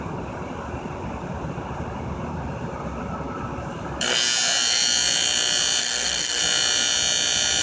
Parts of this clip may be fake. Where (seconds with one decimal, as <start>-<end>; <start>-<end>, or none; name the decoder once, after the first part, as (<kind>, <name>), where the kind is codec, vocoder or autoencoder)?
5.8-6.4 (codec, SNAC)